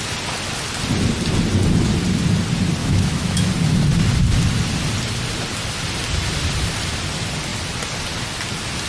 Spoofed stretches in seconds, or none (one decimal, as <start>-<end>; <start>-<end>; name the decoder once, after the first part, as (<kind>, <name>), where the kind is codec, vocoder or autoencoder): 2.8-3.5 (autoencoder, DAC-VAE)